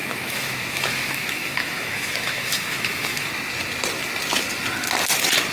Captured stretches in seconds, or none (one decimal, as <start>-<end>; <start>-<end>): 3.3-5.5